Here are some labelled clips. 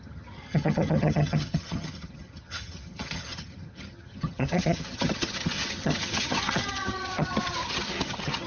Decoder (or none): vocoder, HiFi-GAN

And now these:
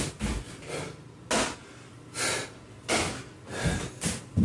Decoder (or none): none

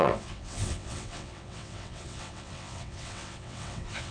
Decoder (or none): vocoder, WaveNeXt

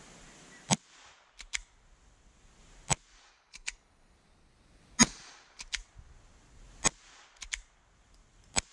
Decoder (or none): none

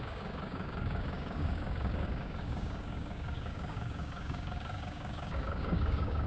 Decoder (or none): codec, DAC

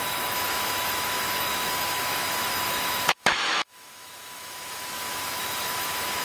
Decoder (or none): autoencoder, DAC-VAE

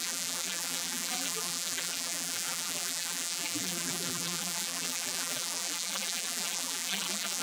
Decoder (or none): vocoder, BigVGAN v2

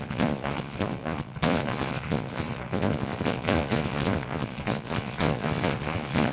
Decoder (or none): vocoder, Vocos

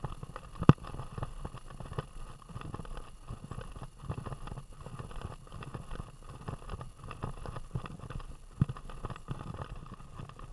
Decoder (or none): none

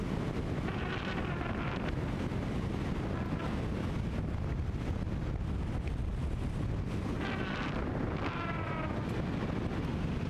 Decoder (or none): none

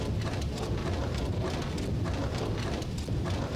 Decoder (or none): none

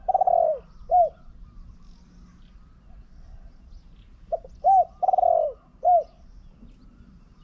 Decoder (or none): none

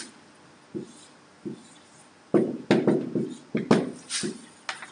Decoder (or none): none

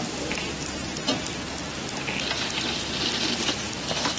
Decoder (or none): none